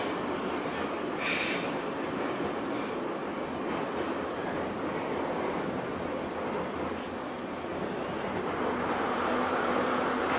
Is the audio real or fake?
real